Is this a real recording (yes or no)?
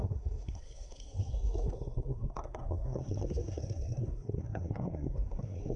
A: no